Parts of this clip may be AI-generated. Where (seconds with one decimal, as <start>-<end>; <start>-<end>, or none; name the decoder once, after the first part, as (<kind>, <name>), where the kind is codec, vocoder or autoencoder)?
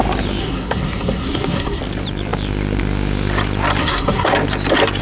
0.4-1.8 (codec, SNAC); 3.8-4.3